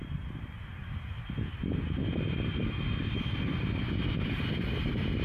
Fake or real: real